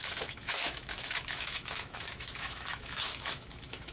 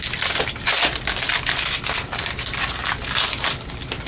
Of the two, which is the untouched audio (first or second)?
second